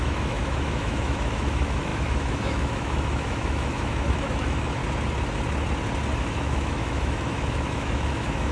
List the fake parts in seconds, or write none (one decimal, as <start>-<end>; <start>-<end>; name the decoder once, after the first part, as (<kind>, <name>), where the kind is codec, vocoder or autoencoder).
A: 0.0-4.8 (autoencoder, DAC-VAE); 6.2-8.5